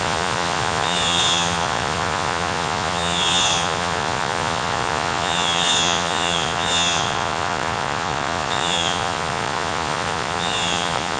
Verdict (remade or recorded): remade